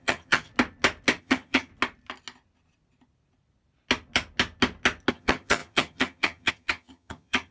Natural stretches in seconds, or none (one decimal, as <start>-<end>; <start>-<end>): 0.5-1.2; 1.7-5.1